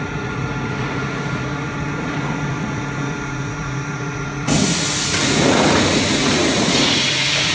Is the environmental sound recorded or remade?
remade